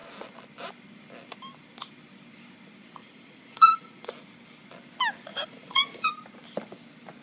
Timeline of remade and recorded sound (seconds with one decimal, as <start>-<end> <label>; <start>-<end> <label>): 0.0-3.0 recorded; 3.0-4.1 remade; 4.1-5.3 recorded; 5.3-6.1 remade; 6.1-7.2 recorded